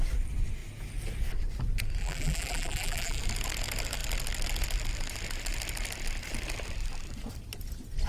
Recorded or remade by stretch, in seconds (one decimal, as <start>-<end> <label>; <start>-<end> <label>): 0.0-2.0 recorded; 2.0-3.2 remade; 3.2-8.1 recorded